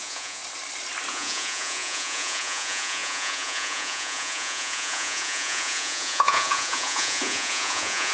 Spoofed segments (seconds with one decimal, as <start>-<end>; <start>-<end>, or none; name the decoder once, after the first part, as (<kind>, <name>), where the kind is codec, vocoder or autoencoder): 0.0-0.4 (vocoder, Vocos); 1.1-8.1